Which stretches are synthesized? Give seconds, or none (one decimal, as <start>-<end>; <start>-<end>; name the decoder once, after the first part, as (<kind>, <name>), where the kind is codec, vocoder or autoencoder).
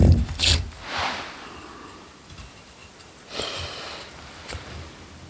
none